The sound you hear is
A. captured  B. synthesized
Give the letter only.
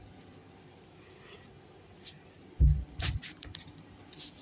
A